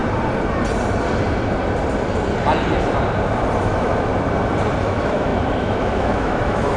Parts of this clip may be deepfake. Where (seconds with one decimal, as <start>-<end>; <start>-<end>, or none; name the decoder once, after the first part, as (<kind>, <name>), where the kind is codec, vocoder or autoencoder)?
3.6-4.1 (autoencoder, DAC-VAE); 4.8-6.8

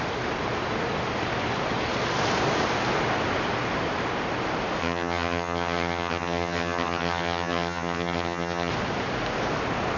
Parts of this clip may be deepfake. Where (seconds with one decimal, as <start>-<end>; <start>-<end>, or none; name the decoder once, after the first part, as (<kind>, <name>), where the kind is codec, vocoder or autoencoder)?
4.8-8.7 (vocoder, HiFi-GAN)

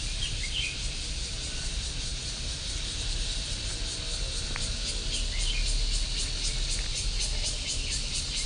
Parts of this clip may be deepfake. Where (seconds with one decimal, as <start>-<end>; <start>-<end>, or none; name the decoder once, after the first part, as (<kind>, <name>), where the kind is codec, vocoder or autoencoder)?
none

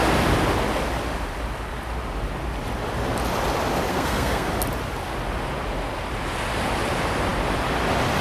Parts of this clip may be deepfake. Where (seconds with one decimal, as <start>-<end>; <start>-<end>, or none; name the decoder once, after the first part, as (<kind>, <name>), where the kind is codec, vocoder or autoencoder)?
3.9-4.5 (codec, SNAC)

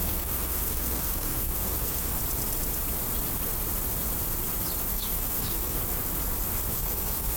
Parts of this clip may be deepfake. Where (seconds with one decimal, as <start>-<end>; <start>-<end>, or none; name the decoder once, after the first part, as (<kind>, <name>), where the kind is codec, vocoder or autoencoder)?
0.0-2.2 (codec, SNAC); 4.9-5.8; 6.7-7.4